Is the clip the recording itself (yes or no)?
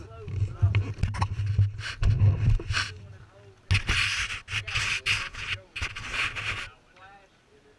yes